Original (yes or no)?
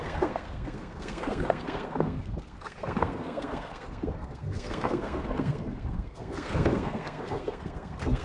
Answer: no